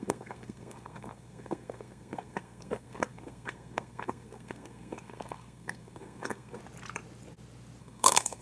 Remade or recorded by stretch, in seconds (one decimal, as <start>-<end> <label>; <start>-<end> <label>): 0.0-6.6 remade; 6.6-7.8 recorded; 7.8-8.4 remade